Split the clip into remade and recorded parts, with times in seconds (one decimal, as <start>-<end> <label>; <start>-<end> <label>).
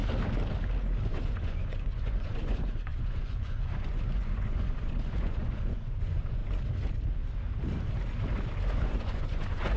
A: 0.0-1.1 recorded; 1.1-6.4 remade; 6.4-8.7 recorded; 8.7-9.8 remade